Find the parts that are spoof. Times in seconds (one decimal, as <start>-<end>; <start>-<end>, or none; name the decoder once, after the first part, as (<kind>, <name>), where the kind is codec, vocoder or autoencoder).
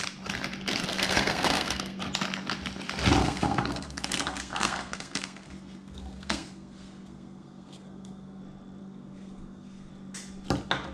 0.9-2.0 (codec, SNAC); 3.2-8.4; 8.8-9.9